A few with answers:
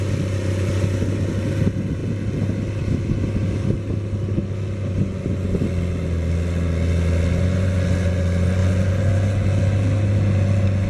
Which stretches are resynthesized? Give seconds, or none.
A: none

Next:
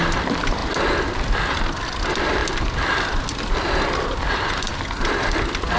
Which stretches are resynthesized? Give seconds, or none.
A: 0.0-0.6 (vocoder, BigVGAN v2); 1.5-2.4; 3.4-5.8

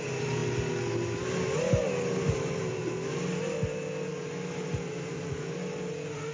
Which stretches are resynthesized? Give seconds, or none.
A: none

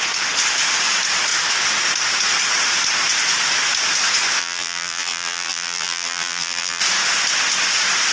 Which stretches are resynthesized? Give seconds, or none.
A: 4.4-6.8 (vocoder, BigVGAN v2)

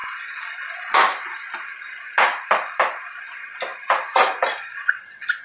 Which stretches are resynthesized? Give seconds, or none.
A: 3.7-4.4 (vocoder, BigVGAN v2)

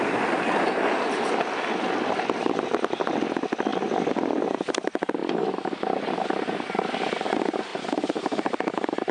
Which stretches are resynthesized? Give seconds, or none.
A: 3.7-4.7 (vocoder, BigVGAN v2); 7.7-9.1

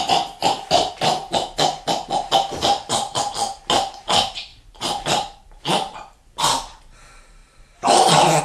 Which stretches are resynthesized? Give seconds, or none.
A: 4.5-6.8 (vocoder, BigVGAN v2)

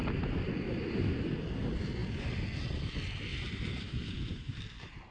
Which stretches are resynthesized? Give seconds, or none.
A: 0.0-1.4 (vocoder, BigVGAN v2); 3.3-5.1